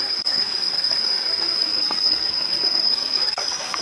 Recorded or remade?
remade